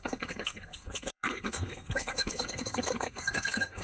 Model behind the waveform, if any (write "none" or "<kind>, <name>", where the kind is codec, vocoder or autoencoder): codec, SNAC